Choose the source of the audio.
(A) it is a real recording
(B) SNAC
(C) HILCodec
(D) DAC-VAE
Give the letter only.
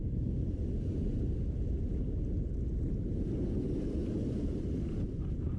A